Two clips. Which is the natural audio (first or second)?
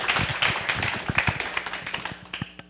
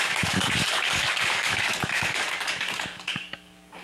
first